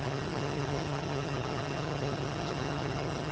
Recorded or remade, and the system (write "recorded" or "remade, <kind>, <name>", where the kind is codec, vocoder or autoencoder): remade, vocoder, HiFi-GAN